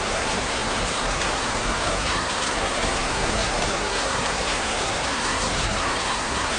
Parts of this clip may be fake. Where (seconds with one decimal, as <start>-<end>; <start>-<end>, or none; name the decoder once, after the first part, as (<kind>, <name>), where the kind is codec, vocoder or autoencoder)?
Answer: 0.0-6.6 (codec, SNAC)